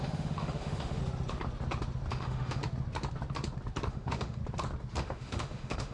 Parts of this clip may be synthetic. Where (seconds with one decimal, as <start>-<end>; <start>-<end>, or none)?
0.0-1.0; 2.1-2.6; 3.9-4.4; 5.0-5.9